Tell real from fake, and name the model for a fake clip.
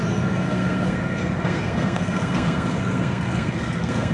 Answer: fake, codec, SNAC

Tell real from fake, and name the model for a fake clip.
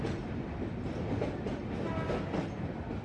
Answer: real